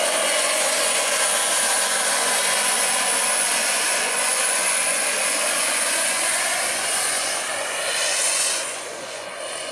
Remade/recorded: remade